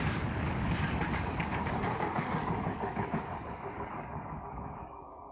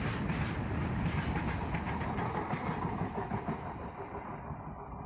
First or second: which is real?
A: second